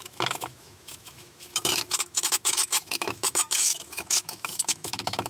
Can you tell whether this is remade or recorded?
remade